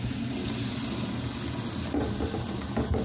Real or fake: real